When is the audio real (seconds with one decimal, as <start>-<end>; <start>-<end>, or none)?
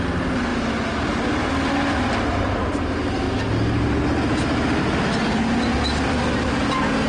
0.0-7.1